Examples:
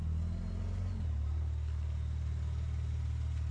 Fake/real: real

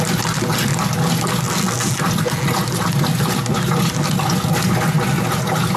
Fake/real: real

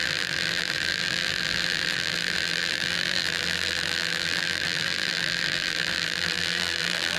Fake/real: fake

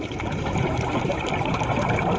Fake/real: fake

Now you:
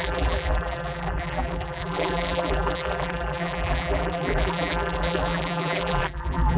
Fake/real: fake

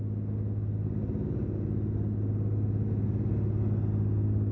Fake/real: real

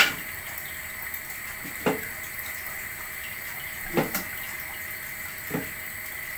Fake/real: real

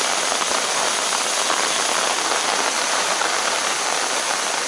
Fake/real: real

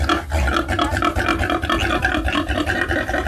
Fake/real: real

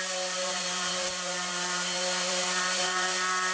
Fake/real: fake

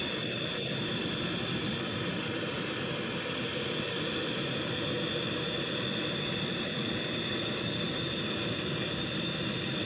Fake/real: fake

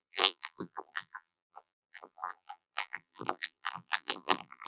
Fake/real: fake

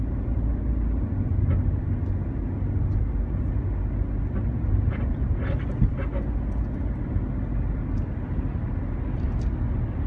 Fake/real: real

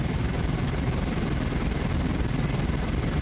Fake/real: fake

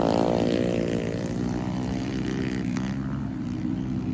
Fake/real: fake